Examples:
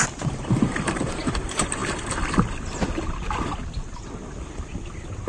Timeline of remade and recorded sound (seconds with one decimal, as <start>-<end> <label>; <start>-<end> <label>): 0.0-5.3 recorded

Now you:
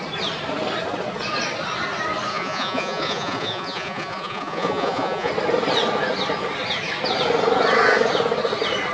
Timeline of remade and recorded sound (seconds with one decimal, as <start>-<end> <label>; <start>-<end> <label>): 0.0-2.3 recorded; 2.3-5.3 remade; 5.3-8.9 recorded

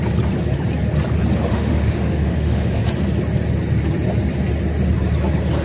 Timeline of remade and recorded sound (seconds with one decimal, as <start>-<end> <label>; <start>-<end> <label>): 0.0-1.5 recorded; 1.5-2.8 remade; 2.8-5.6 recorded

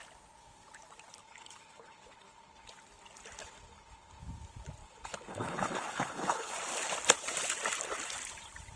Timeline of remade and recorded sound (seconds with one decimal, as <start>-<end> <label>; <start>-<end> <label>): 0.0-1.2 recorded; 1.2-2.7 remade; 2.7-3.4 recorded; 3.4-4.2 remade; 4.2-4.8 recorded; 4.8-6.5 remade; 6.5-8.8 recorded